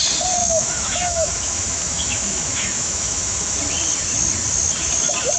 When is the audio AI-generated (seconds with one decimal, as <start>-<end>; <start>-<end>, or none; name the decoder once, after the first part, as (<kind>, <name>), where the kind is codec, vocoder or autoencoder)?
0.4-3.6 (autoencoder, DAC-VAE)